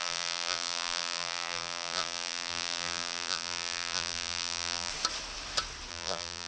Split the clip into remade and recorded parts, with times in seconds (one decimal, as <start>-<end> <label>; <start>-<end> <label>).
0.0-4.9 remade; 4.9-5.9 recorded; 5.9-6.5 remade